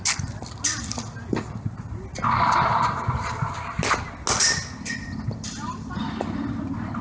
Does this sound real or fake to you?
real